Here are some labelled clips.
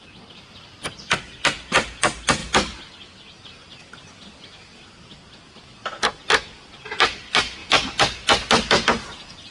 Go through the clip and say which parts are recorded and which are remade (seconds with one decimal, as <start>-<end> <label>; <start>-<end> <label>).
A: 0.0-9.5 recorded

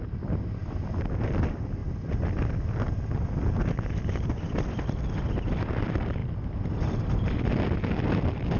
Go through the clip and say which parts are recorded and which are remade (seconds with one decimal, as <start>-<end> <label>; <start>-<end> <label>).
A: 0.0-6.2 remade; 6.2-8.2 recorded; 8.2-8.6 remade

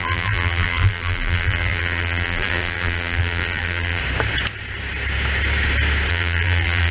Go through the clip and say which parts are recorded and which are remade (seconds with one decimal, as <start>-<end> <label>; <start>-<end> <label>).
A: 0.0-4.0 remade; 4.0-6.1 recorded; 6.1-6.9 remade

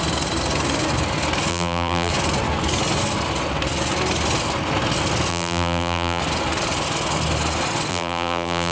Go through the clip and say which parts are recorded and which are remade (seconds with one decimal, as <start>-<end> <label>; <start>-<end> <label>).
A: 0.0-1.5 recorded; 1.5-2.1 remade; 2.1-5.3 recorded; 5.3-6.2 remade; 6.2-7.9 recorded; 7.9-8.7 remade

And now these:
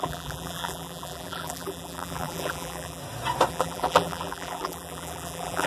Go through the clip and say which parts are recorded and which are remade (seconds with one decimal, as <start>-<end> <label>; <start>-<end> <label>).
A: 0.0-3.0 remade; 3.0-3.5 recorded; 3.5-5.7 remade

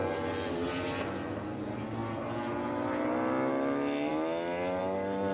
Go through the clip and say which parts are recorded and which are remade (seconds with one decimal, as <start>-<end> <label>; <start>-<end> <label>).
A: 0.0-5.3 recorded

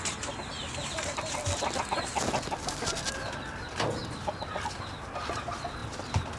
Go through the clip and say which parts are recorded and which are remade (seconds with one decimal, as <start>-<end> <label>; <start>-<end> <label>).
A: 0.0-6.4 recorded

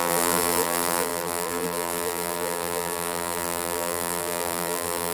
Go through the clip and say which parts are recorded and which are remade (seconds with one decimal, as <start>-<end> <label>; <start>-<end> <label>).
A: 0.0-5.1 remade